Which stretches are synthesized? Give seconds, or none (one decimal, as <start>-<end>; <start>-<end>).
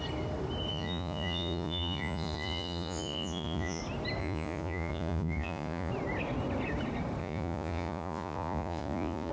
0.7-3.8; 4.2-5.9; 7.2-9.3